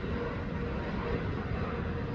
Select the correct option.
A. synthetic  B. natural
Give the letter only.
B